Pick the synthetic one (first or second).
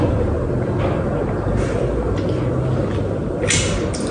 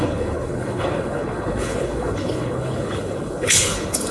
second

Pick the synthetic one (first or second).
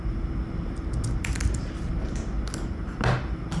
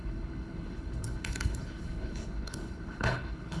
second